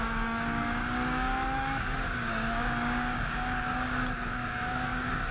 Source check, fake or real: fake